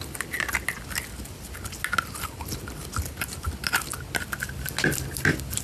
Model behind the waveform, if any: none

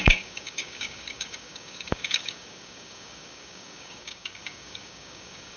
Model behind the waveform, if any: codec, DAC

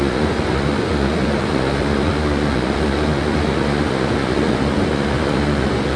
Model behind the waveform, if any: vocoder, Vocos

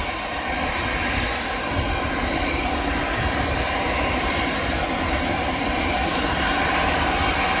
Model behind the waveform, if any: none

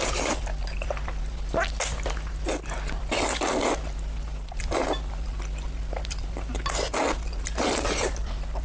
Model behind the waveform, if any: none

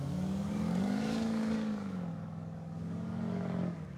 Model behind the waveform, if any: codec, DAC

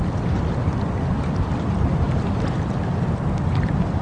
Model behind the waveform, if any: none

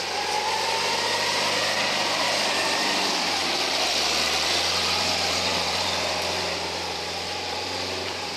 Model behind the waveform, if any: vocoder, BigVGAN v2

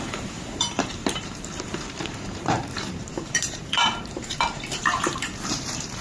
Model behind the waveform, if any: vocoder, BigVGAN v2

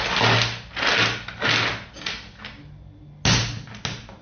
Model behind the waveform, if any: none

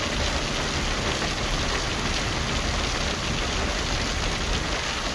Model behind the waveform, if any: none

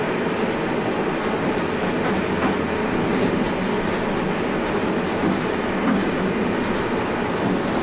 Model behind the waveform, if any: none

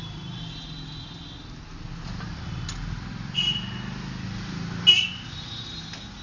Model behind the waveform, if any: none